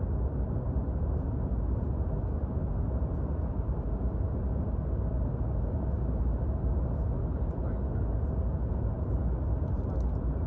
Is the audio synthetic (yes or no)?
no